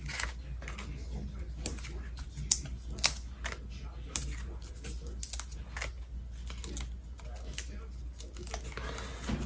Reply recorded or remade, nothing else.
recorded